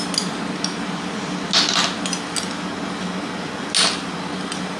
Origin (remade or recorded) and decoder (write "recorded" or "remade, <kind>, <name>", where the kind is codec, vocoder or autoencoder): recorded